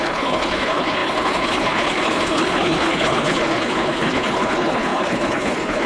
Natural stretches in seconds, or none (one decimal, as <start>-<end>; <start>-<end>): none

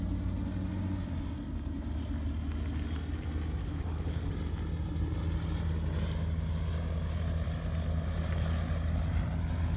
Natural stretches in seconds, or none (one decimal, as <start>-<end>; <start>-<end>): 0.0-3.6; 4.3-9.8